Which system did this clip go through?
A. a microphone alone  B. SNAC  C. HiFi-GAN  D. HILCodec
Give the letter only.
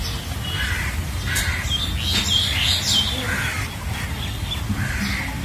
A